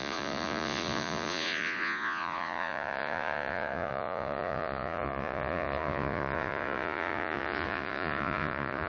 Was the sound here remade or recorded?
remade